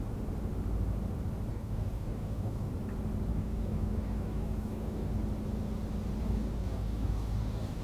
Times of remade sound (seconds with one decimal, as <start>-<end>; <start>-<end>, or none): 1.5-2.7; 3.3-5.1; 6.2-7.8